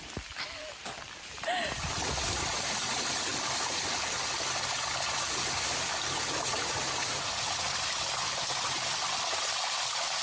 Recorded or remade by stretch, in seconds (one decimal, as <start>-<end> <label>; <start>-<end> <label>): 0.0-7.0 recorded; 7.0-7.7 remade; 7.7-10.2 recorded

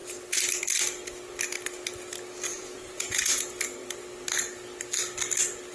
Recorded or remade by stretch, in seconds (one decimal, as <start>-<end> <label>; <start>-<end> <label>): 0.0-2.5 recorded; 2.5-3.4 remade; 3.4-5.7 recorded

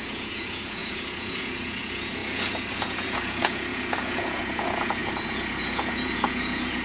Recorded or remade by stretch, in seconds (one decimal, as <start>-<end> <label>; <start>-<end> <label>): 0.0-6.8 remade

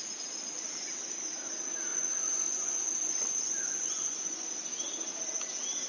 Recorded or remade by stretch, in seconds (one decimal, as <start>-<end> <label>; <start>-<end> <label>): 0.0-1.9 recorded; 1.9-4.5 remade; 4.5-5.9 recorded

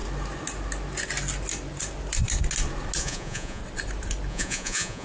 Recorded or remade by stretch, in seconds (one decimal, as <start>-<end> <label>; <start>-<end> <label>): 0.0-3.0 recorded; 3.0-3.6 remade; 3.6-4.3 recorded; 4.3-5.0 remade

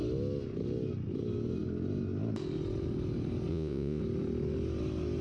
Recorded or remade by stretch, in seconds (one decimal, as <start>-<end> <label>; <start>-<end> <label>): 0.0-3.5 recorded; 3.5-4.0 remade; 4.0-5.2 recorded

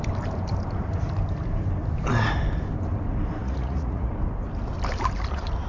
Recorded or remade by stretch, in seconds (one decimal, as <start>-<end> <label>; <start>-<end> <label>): 0.0-3.4 recorded; 3.4-4.1 remade; 4.1-5.7 recorded

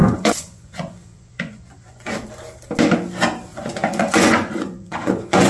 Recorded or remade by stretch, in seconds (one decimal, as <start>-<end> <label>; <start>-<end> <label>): 0.0-2.1 remade; 2.1-3.5 recorded; 3.5-5.5 remade